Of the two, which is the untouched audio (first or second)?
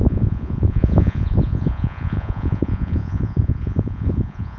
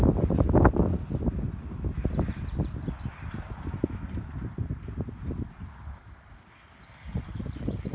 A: second